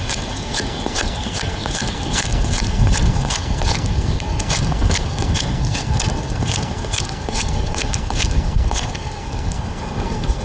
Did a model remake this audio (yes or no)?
yes